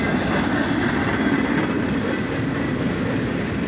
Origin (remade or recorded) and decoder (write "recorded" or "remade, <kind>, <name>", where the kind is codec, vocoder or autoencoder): recorded